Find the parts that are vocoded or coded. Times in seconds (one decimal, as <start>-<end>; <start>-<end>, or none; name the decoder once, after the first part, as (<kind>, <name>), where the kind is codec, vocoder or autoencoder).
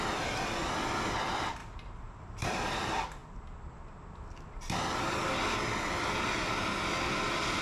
1.6-2.6 (vocoder, BigVGAN v2)